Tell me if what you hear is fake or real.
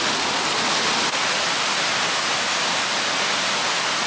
real